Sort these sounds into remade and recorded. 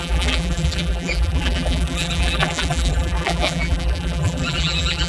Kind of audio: remade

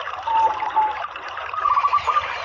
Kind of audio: recorded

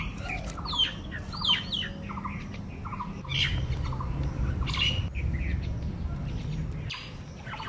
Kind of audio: recorded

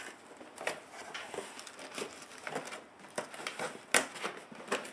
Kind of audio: recorded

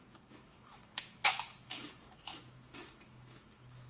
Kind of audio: remade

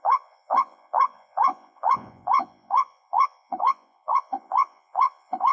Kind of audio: remade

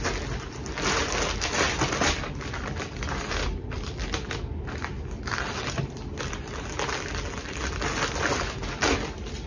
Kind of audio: recorded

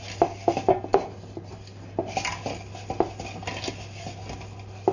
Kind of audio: recorded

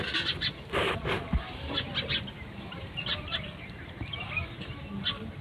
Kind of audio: recorded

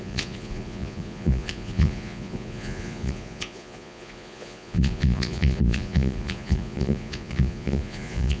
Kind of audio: remade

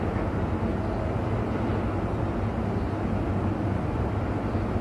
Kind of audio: recorded